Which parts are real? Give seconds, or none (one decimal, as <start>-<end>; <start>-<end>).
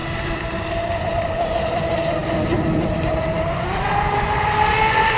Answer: 0.7-5.2